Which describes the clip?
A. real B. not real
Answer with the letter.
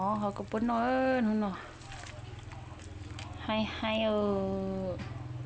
A